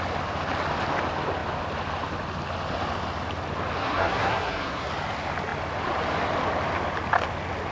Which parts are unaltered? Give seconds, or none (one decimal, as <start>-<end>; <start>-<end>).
0.0-3.8; 4.9-7.7